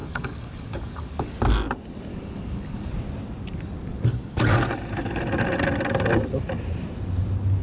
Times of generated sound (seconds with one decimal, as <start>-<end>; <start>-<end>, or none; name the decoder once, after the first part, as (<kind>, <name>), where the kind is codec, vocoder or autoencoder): 0.0-1.3 (codec, DAC); 2.1-2.9